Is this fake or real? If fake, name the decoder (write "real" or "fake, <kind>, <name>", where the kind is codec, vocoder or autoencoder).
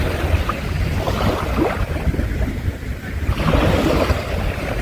real